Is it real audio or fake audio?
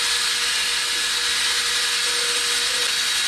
real